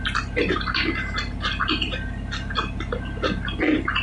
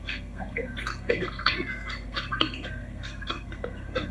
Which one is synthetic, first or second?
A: second